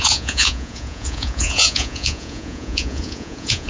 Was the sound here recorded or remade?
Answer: remade